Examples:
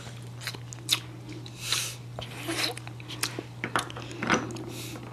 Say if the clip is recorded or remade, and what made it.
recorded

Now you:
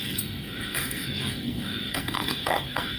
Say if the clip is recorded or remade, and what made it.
remade, codec, SNAC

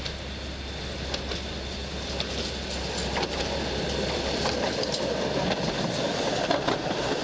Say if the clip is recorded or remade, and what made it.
recorded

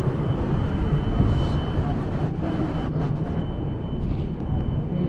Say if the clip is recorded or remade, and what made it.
recorded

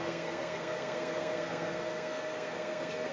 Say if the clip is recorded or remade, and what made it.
remade, codec, SNAC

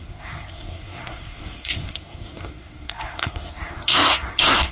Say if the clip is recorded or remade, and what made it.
remade, codec, SNAC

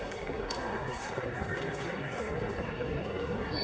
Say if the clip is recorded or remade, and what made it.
remade, codec, SNAC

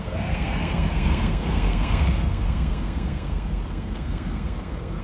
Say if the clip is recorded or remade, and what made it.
remade, codec, SNAC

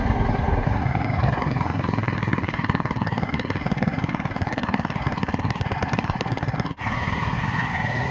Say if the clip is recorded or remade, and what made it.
remade, codec, SNAC